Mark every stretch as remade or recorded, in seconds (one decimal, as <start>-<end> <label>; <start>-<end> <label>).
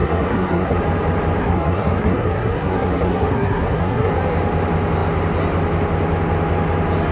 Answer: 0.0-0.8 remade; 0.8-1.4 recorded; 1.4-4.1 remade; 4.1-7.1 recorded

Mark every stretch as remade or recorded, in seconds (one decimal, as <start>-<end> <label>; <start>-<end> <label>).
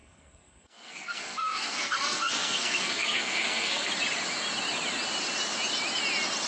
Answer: 0.0-3.9 remade; 3.9-6.5 recorded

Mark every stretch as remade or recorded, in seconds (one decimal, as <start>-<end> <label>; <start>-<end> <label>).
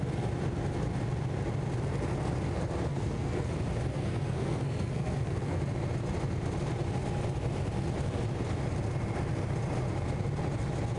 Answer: 0.0-2.9 recorded; 2.9-3.5 remade; 3.5-3.9 recorded; 3.9-5.6 remade; 5.6-11.0 recorded